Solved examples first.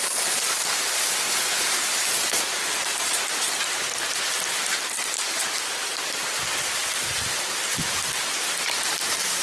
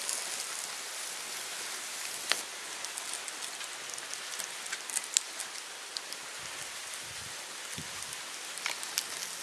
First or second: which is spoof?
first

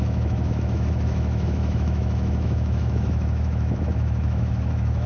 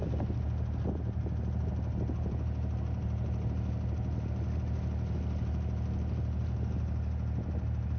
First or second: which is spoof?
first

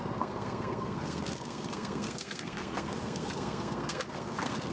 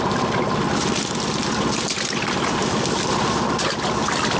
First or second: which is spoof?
first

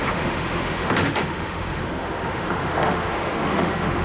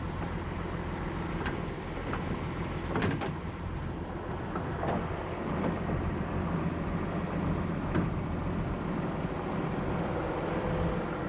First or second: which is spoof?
first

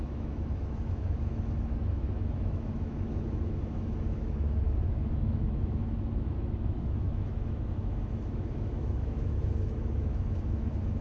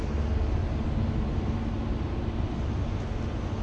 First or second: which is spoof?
first